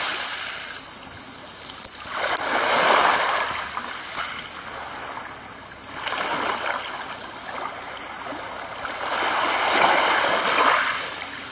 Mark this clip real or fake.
real